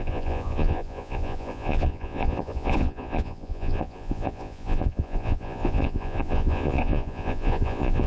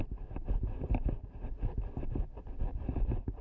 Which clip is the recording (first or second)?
second